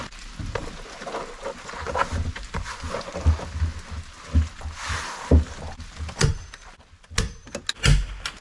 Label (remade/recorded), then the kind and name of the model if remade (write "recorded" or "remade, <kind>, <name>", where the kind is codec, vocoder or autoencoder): recorded